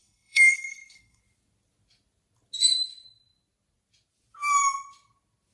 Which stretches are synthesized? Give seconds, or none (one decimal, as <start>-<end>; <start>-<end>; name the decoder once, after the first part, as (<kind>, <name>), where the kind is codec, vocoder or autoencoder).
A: 0.0-1.2 (codec, SNAC)